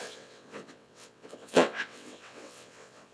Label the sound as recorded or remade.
remade